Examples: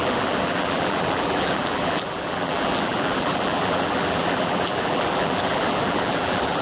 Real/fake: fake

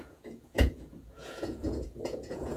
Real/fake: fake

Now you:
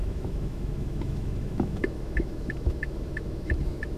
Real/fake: fake